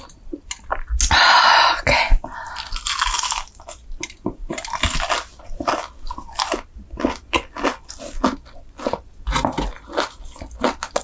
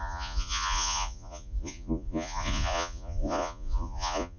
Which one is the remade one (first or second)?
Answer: second